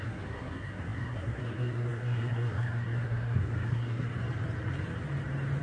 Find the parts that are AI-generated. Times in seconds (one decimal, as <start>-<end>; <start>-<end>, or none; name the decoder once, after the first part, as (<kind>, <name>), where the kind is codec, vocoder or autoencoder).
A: 0.0-4.1 (codec, SNAC)